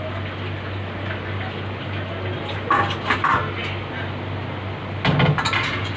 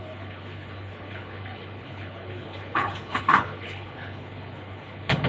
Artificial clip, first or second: second